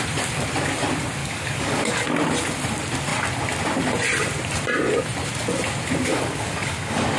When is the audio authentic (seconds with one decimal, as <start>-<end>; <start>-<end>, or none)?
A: 0.0-1.2; 2.0-6.1